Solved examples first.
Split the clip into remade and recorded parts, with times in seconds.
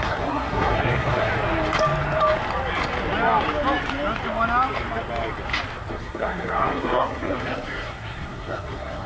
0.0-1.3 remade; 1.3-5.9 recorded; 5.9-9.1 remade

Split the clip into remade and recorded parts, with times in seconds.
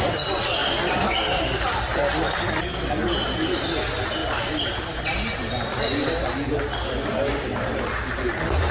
0.0-0.6 recorded; 0.6-1.4 remade; 1.4-7.1 recorded; 7.1-7.7 remade; 7.7-8.7 recorded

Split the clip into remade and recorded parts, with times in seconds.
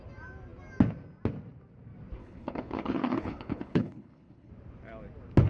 0.0-2.2 recorded; 2.2-4.5 remade; 4.5-5.5 recorded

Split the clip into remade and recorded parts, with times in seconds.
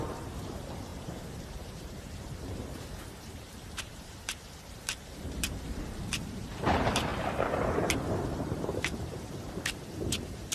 0.0-10.5 remade